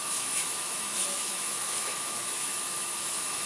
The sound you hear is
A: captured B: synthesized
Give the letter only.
B